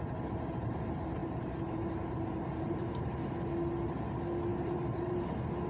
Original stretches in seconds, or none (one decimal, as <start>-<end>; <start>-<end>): 0.0-1.2; 3.2-4.5; 5.2-5.7